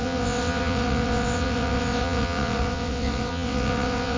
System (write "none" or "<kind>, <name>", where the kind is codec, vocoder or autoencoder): vocoder, WaveNeXt